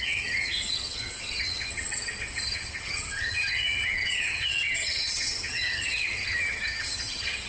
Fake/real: fake